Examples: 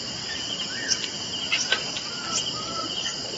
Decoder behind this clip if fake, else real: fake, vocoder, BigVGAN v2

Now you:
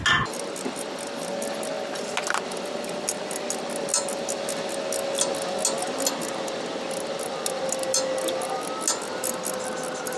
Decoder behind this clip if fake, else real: real